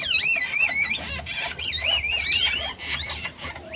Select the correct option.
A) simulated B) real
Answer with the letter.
B